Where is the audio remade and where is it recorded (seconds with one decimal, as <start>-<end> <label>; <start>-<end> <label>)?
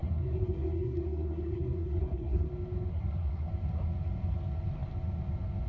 0.0-2.5 remade; 2.5-2.9 recorded; 2.9-3.5 remade; 3.5-5.7 recorded